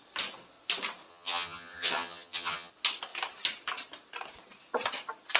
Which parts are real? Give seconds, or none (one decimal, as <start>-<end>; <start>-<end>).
0.0-1.1; 2.7-5.4